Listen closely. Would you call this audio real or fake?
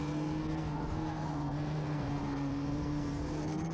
fake